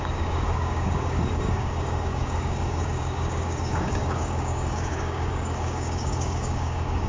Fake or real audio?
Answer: fake